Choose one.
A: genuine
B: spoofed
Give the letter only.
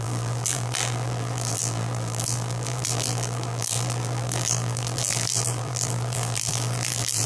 B